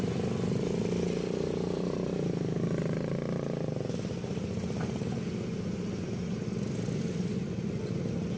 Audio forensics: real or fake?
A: real